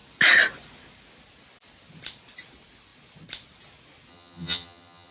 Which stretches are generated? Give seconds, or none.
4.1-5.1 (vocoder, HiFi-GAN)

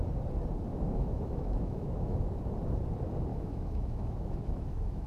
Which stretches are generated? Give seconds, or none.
0.7-2.4 (autoencoder, DAC-VAE); 3.3-5.1

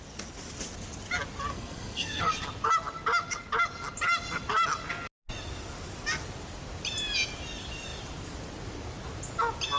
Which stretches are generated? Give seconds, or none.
1.5-2.3 (codec, SNAC)

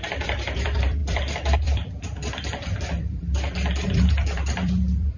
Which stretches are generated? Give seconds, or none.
0.0-5.2 (vocoder, BigVGAN v2)

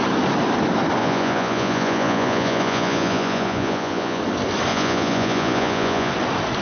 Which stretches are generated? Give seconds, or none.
1.0-4.2 (vocoder, Vocos); 4.7-6.1